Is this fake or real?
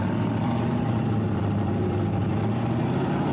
fake